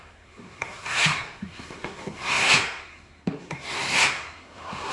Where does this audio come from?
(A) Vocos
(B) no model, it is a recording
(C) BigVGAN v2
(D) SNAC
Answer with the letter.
D